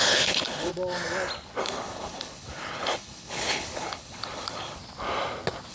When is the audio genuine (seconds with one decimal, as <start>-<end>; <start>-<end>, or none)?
0.7-1.6; 4.8-5.7